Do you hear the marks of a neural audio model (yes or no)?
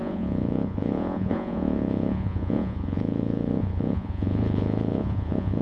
yes